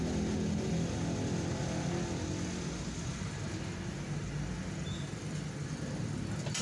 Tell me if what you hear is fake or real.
real